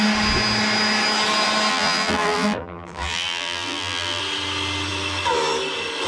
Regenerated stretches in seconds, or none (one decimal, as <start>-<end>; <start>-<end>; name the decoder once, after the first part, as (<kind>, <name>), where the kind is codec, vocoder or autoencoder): 1.7-4.2 (vocoder, BigVGAN v2)